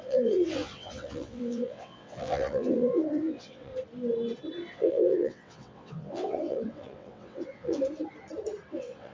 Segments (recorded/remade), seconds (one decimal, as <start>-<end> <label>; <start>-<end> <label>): 0.0-3.7 remade; 3.7-4.7 recorded; 4.7-7.8 remade; 7.8-8.7 recorded; 8.7-9.1 remade